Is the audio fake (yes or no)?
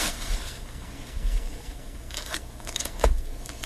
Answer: yes